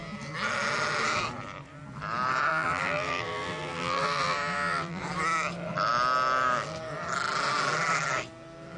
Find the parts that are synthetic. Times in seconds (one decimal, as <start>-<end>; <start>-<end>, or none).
2.5-5.0